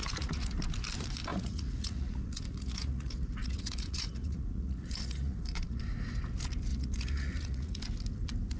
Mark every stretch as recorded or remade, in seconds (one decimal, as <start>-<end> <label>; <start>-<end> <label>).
0.0-0.6 remade; 0.6-1.3 recorded; 1.3-5.8 remade; 5.8-6.7 recorded; 6.7-7.8 remade; 7.8-8.6 recorded